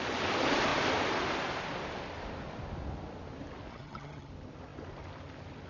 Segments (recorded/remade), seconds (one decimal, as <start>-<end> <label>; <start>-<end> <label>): 0.0-3.7 recorded; 3.7-4.3 remade; 4.3-5.7 recorded